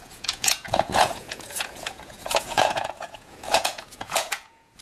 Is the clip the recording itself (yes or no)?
no